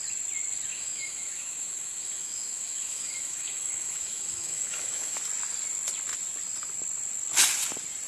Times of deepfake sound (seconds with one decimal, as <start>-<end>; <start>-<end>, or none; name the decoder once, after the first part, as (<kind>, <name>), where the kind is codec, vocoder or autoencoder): 0.7-5.2 (autoencoder, DAC-VAE)